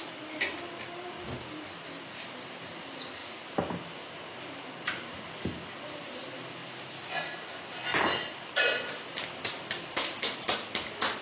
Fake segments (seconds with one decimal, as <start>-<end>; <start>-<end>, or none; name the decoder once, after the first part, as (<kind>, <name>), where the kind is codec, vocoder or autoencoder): none